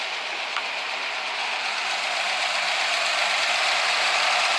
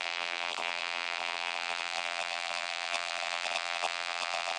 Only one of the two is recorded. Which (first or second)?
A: first